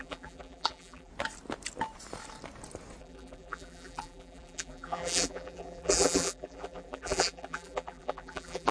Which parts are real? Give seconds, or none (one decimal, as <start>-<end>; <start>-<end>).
1.1-3.0